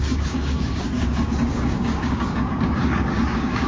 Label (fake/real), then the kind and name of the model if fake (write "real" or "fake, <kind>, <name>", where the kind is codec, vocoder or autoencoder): fake, codec, DAC